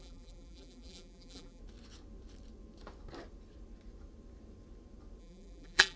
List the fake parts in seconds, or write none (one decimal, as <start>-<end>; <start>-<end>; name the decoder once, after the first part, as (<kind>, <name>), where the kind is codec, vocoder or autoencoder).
0.0-1.6 (vocoder, BigVGAN v2); 5.2-6.0

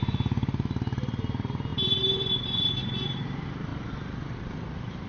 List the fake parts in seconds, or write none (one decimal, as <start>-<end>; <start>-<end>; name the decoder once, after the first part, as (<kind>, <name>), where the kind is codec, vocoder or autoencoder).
1.7-3.2 (vocoder, BigVGAN v2); 3.7-5.1

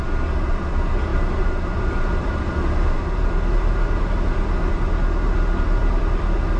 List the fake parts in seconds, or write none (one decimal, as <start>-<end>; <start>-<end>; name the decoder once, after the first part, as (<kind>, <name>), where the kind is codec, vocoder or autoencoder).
1.1-2.5 (vocoder, BigVGAN v2)

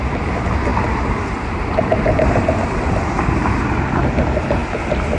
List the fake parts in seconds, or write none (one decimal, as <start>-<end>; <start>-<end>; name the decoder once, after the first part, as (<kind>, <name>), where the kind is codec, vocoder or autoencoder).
0.7-3.8 (vocoder, BigVGAN v2)

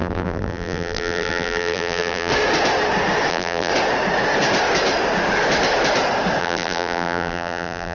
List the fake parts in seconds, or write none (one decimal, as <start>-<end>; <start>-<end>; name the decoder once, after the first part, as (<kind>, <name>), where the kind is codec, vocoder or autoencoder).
0.0-2.3 (vocoder, BigVGAN v2); 3.3-3.7; 6.4-7.9

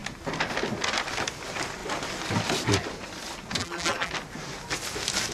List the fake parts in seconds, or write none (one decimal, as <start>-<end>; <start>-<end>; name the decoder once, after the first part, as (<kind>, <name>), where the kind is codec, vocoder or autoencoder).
3.6-4.1 (vocoder, BigVGAN v2)

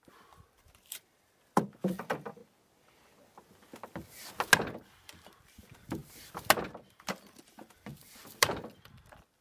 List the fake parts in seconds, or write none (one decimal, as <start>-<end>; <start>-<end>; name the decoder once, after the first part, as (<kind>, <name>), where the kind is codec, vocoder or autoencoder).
0.0-2.4 (vocoder, BigVGAN v2); 4.9-6.0; 6.9-7.9; 8.7-9.4

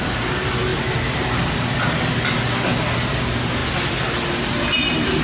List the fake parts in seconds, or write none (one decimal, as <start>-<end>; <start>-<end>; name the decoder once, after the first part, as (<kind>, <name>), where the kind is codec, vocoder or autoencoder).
none